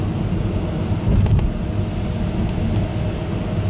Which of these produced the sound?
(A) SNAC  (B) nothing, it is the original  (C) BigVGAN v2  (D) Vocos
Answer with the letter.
B